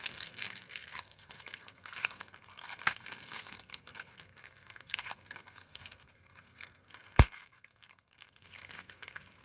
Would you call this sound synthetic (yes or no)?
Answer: yes